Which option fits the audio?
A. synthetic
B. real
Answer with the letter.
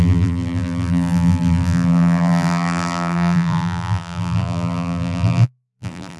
A